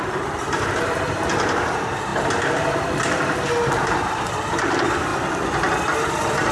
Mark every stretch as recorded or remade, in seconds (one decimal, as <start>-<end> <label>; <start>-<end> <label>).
0.0-2.1 remade; 2.1-4.0 recorded; 4.0-5.1 remade; 5.1-6.1 recorded; 6.1-6.5 remade